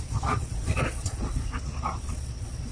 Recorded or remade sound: remade